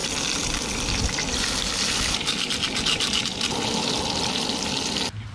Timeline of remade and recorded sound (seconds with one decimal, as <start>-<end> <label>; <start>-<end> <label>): 0.0-5.3 recorded